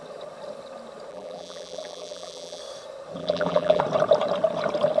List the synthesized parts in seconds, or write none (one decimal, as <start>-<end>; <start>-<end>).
1.1-2.6; 3.2-3.8